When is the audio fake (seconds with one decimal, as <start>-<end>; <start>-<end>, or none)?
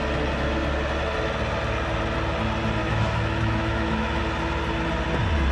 2.8-4.2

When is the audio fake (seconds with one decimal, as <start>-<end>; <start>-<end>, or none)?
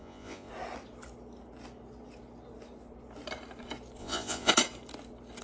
0.0-0.5; 4.0-4.5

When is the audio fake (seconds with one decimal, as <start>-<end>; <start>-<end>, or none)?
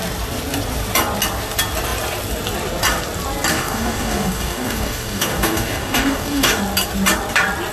3.5-6.6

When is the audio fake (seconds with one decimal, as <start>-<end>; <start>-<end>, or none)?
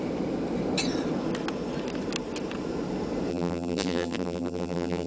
3.3-5.1